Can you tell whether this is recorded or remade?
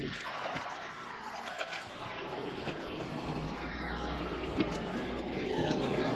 remade